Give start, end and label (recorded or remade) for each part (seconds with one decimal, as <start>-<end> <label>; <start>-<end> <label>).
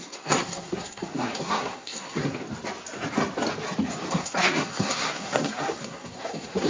0.0-2.4 remade; 2.4-4.1 recorded; 4.1-6.7 remade